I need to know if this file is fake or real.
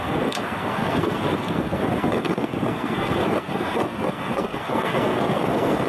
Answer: fake